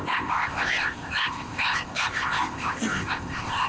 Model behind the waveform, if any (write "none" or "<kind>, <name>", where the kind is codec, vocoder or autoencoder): codec, ZipCodec